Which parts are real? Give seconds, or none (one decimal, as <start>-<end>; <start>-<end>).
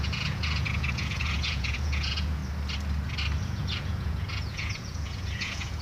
2.4-3.4